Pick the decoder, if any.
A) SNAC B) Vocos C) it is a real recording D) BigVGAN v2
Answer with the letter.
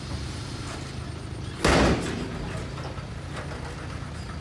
C